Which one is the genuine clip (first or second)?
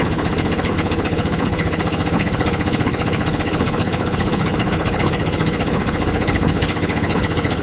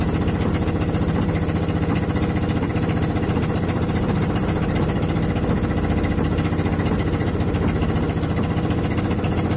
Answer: second